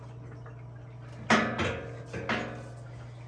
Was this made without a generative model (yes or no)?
yes